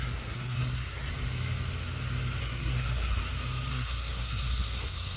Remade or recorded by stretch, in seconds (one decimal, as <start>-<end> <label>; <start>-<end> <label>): 0.0-1.1 remade; 1.1-2.4 recorded; 2.4-3.2 remade; 3.2-3.7 recorded; 3.7-5.2 remade

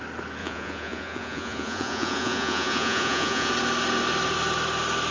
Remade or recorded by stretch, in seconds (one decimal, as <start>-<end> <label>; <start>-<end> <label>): 0.0-0.4 recorded; 0.4-3.5 remade; 3.5-5.1 recorded

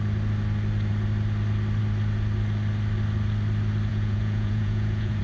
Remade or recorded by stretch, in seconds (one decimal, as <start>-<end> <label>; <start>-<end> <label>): 0.0-3.9 recorded; 3.9-5.2 remade

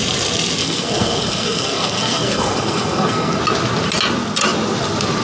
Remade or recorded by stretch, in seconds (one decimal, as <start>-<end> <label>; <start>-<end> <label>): 0.0-0.6 recorded; 0.6-3.4 remade; 3.4-5.2 recorded

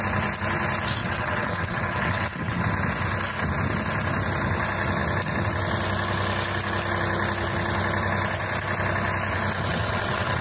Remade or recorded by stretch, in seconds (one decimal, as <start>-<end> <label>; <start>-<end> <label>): 0.0-1.0 recorded; 1.0-2.6 remade; 2.6-9.7 recorded; 9.7-10.4 remade

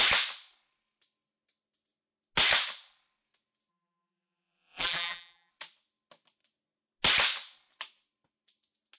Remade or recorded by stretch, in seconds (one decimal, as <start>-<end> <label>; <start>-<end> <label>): 0.0-3.7 recorded; 3.7-5.5 remade; 5.5-9.0 recorded

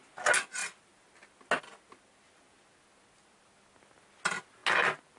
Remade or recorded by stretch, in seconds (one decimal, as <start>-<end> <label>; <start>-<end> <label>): 0.0-5.2 recorded